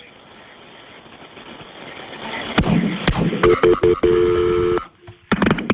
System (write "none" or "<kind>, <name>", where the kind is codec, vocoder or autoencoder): none